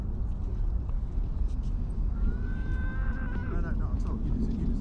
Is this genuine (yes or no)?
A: yes